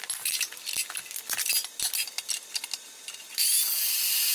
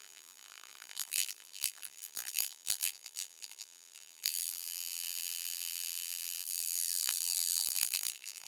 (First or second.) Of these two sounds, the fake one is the second